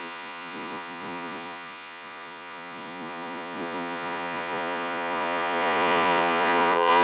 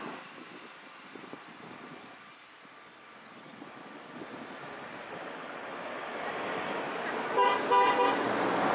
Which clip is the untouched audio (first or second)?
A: second